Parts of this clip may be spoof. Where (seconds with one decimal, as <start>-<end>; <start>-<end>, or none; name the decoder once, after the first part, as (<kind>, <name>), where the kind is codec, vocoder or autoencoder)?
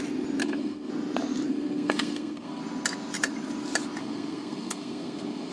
0.4-0.9 (codec, SNAC); 1.5-2.6; 4.0-5.5